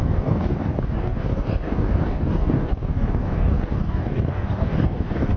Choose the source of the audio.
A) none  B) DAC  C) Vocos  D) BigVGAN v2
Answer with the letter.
B